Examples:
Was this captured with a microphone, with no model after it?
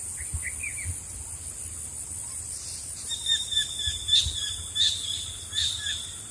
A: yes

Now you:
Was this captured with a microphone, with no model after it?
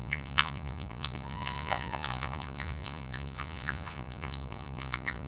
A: no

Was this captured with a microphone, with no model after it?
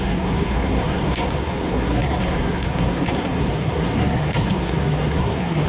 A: no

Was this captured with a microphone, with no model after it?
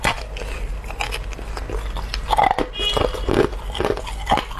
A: yes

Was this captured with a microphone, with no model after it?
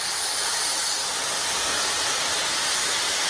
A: yes